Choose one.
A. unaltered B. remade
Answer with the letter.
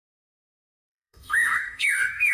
B